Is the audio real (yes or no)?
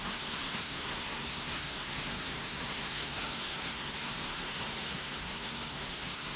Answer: no